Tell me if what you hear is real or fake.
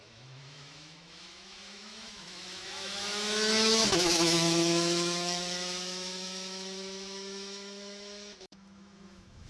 fake